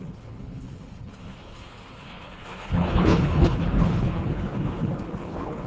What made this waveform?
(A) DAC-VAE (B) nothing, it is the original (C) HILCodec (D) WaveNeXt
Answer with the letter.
C